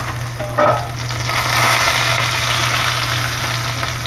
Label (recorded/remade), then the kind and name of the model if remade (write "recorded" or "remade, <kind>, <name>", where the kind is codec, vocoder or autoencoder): recorded